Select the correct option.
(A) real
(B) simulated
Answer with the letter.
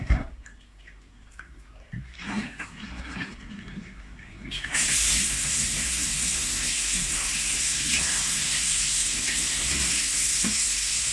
B